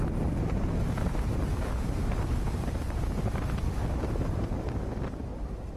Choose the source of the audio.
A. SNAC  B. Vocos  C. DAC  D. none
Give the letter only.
D